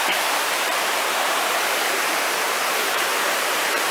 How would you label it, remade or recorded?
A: remade